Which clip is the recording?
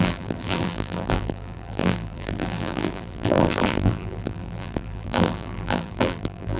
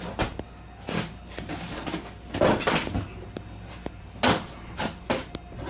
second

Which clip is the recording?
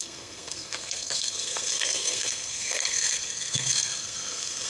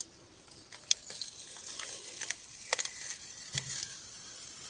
second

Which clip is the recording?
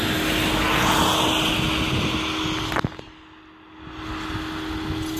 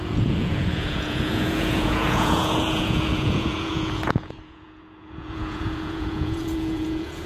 first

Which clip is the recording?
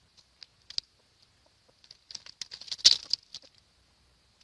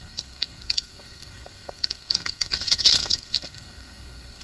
first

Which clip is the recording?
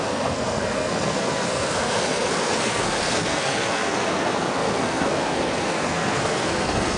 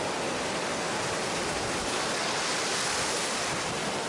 second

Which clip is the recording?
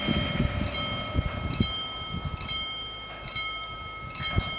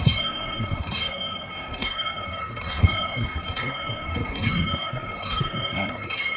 first